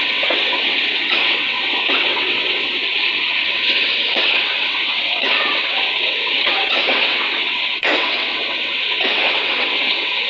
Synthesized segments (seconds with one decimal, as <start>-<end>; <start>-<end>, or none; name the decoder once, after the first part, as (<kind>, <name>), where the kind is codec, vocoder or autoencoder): 0.0-2.8 (vocoder, WaveNeXt); 3.5-10.3